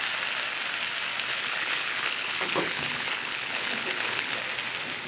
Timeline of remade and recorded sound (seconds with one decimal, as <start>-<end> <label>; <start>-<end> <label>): 0.0-1.3 recorded; 1.3-4.4 remade; 4.4-5.1 recorded